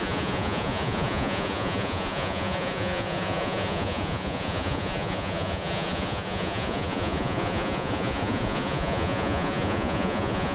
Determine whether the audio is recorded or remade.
remade